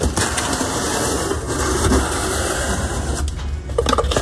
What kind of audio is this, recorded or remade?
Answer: recorded